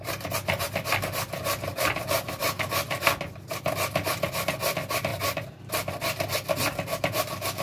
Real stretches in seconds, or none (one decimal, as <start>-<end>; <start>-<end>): 0.0-5.1; 5.7-7.6